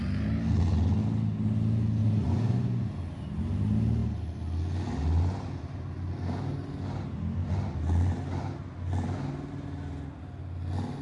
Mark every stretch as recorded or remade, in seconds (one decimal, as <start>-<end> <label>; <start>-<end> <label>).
0.0-2.0 recorded; 2.0-2.9 remade; 2.9-11.0 recorded